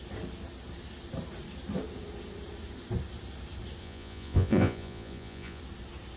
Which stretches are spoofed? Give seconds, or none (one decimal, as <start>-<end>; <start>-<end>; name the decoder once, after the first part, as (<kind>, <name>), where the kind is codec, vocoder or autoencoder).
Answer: 3.8-5.6 (vocoder, Vocos)